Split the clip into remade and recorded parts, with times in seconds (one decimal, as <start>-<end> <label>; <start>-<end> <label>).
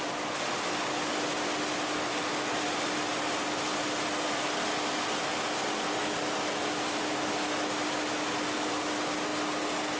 0.0-10.0 recorded